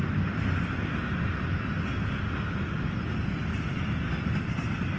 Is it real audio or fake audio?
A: real